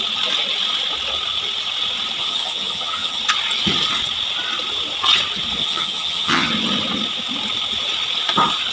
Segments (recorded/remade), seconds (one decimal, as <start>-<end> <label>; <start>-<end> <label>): 0.0-2.2 recorded; 2.2-3.2 remade; 3.2-5.6 recorded; 5.6-6.5 remade; 6.5-8.7 recorded

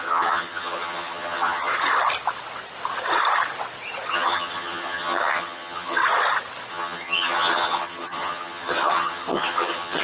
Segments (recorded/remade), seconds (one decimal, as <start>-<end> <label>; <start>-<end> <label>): 0.0-1.7 remade; 1.7-4.1 recorded; 4.1-6.0 remade; 6.0-6.7 recorded; 6.7-10.0 remade

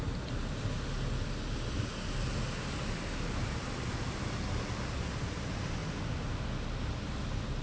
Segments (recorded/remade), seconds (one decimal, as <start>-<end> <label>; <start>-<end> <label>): 0.0-7.6 recorded